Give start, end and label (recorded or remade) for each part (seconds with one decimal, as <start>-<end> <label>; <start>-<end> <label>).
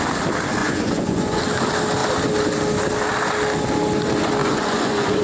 0.0-0.6 recorded; 0.6-1.4 remade; 1.4-4.4 recorded; 4.4-5.2 remade